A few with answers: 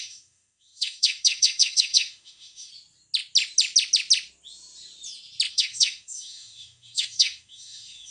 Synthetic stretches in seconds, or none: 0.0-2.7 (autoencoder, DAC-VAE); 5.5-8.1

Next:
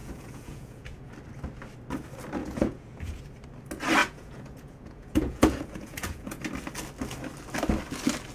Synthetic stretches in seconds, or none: 0.0-1.1 (vocoder, Vocos); 2.4-3.2; 4.0-6.4

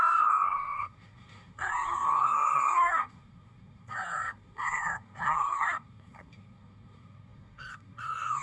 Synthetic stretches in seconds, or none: 0.0-8.4 (codec, SNAC)

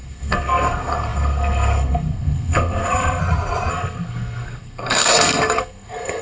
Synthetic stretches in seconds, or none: 0.0-3.2 (codec, SNAC); 3.7-6.2

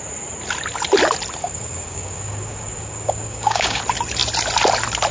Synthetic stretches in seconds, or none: 1.4-3.8 (codec, DAC)

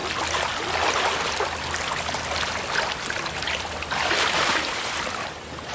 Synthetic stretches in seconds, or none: 3.4-5.7 (vocoder, BigVGAN v2)

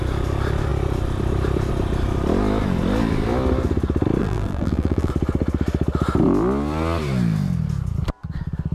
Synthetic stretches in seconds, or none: 4.2-5.1 (vocoder, BigVGAN v2)

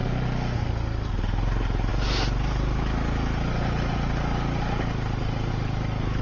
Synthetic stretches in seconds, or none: none